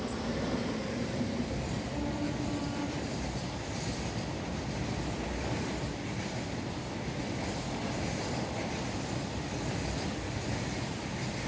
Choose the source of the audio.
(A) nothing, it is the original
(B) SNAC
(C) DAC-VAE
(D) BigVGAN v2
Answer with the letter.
A